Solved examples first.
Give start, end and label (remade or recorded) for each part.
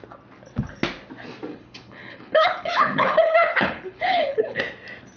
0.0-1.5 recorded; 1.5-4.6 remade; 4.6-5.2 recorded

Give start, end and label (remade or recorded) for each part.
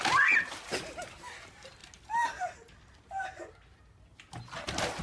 0.0-5.0 recorded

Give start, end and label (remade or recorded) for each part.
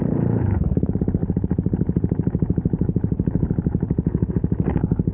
0.0-5.1 remade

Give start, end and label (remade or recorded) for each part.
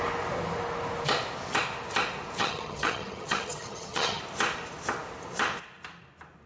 0.0-2.4 recorded; 2.4-4.2 remade; 4.2-6.5 recorded